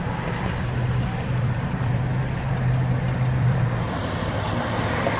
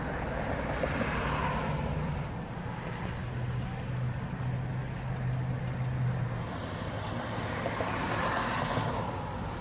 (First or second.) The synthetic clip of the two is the first